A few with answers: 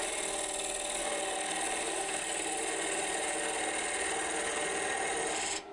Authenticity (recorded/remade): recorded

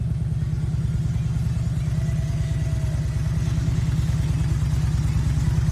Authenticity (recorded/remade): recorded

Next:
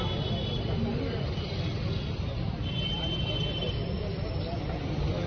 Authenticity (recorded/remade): recorded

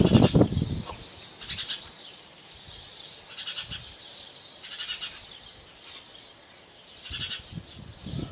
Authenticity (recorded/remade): recorded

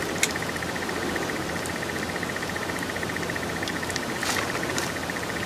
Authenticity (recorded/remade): recorded